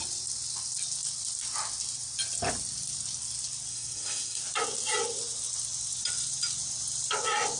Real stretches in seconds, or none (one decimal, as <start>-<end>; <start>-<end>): 0.0-3.7; 4.4-7.6